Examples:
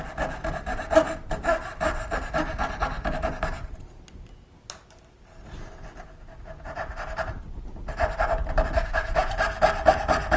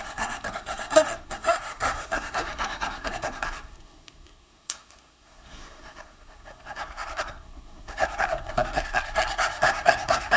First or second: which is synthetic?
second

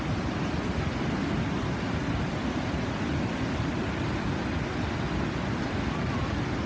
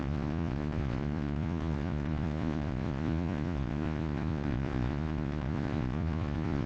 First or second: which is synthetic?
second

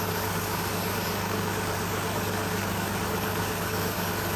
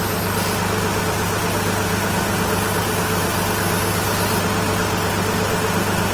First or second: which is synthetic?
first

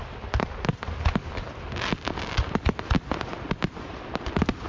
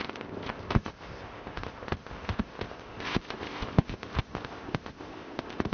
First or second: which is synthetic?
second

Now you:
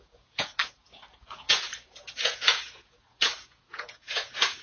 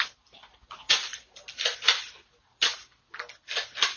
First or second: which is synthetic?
first